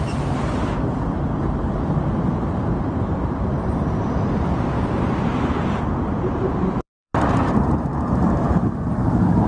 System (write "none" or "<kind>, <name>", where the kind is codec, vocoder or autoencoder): vocoder, BigVGAN v2